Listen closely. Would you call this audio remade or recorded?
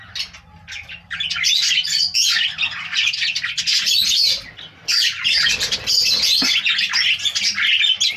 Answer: recorded